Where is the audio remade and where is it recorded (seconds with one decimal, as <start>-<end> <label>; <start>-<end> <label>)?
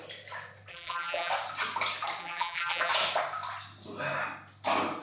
0.0-0.7 recorded; 0.7-1.3 remade; 1.3-2.2 recorded; 2.2-2.9 remade; 2.9-5.0 recorded